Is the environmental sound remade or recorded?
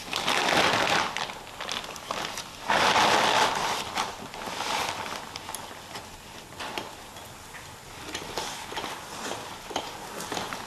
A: recorded